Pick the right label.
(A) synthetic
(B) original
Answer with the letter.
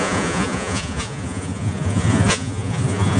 A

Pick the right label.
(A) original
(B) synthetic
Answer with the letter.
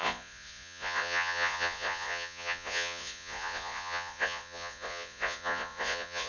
B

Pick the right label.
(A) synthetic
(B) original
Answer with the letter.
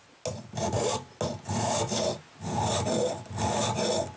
B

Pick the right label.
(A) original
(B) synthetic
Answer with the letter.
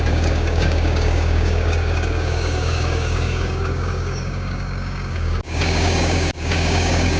B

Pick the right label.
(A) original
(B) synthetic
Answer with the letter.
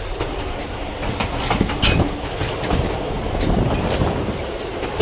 A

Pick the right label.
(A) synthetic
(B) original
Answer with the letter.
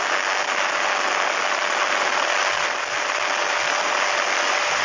B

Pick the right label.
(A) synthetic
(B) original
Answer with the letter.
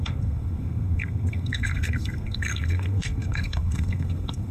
A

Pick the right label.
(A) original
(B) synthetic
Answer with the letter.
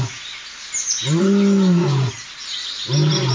A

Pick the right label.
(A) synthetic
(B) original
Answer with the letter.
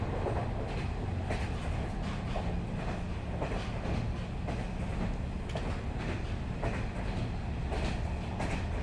B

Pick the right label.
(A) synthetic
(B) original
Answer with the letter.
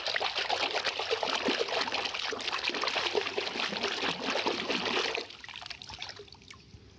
B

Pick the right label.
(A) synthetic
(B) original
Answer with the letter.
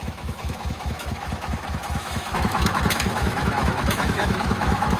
A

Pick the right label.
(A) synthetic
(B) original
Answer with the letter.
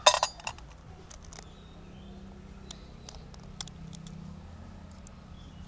B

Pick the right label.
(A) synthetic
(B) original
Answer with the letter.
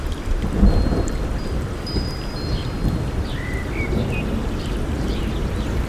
A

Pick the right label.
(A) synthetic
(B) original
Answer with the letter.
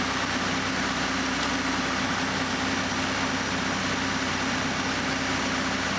B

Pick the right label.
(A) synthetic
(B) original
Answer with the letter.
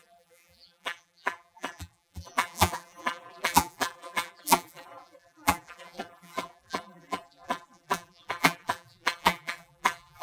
A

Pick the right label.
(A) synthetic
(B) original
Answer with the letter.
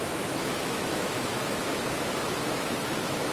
A